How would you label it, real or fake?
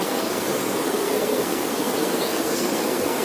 fake